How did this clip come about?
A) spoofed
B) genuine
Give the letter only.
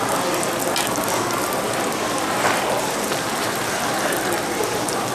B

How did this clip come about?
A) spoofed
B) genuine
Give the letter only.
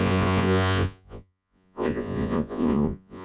A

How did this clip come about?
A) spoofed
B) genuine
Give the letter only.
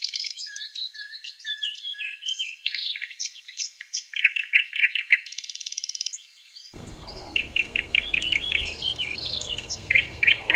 A